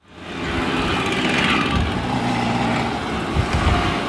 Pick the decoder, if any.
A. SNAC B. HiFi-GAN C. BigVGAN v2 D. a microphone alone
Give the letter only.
D